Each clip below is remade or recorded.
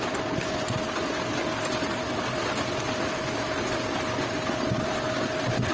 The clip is recorded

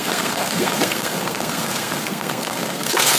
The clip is remade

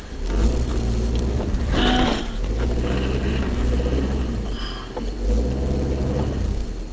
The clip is recorded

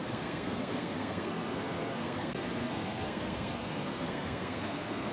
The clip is remade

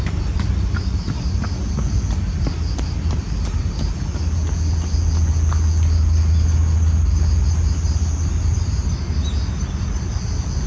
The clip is recorded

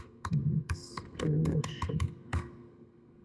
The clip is remade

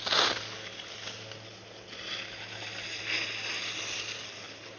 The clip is recorded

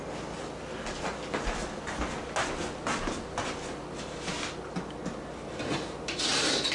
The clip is recorded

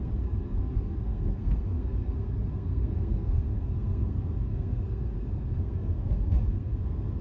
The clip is remade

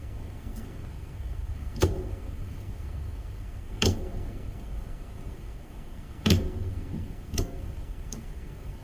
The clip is remade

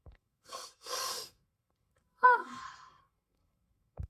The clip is remade